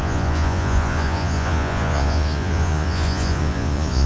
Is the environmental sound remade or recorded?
remade